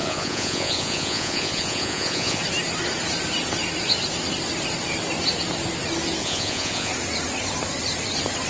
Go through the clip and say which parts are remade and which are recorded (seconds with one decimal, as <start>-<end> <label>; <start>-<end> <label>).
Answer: 0.0-2.4 remade; 2.4-6.2 recorded; 6.2-6.9 remade; 6.9-8.5 recorded

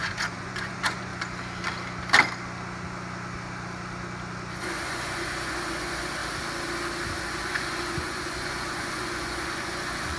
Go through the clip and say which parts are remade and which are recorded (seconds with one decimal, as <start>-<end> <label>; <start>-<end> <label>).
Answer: 0.0-1.1 remade; 1.1-4.6 recorded; 4.6-6.2 remade; 6.2-7.2 recorded; 7.2-10.2 remade